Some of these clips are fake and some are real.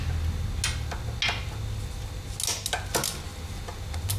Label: real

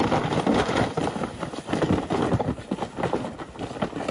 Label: real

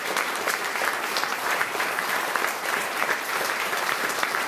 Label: fake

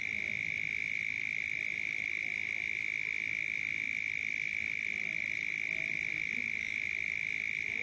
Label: fake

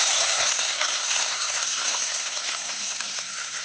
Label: fake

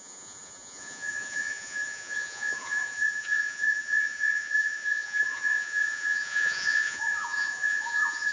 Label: fake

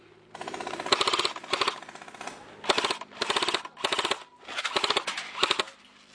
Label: real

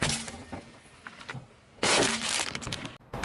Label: real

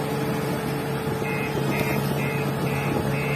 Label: real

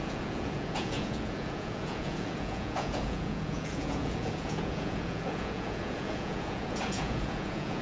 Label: fake